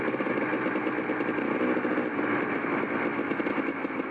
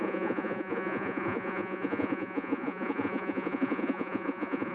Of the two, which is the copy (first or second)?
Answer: second